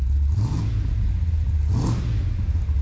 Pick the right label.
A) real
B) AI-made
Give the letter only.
A